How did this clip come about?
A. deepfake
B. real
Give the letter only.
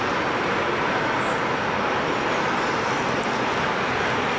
B